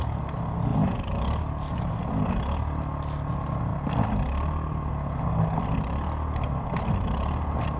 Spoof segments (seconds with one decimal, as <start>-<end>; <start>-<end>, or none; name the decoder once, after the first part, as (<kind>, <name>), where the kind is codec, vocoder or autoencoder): none

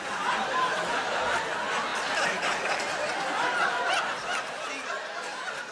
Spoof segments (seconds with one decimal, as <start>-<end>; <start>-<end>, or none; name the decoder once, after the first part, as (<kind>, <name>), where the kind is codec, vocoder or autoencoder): none

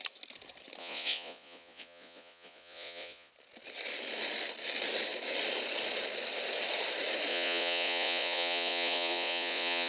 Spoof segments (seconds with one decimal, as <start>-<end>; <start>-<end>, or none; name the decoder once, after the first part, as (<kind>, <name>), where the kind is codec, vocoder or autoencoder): 0.8-3.3 (vocoder, Vocos); 7.3-9.9

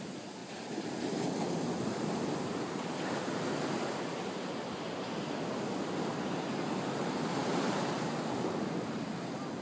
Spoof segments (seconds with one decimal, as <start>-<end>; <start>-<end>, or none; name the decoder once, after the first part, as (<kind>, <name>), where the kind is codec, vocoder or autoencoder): none